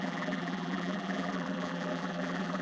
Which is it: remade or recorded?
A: remade